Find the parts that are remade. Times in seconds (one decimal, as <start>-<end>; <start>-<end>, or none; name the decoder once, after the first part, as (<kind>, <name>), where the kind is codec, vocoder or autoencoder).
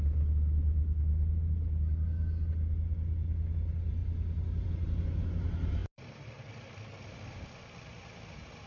4.0-4.7 (vocoder, BigVGAN v2); 5.8-6.5